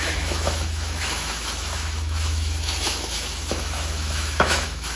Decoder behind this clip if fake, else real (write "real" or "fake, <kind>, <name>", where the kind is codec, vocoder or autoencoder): fake, autoencoder, DAC-VAE